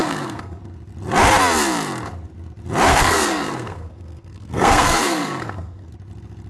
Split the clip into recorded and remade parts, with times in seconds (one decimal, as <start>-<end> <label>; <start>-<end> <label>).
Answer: 0.0-0.6 remade; 0.6-2.9 recorded; 2.9-5.9 remade; 5.9-6.5 recorded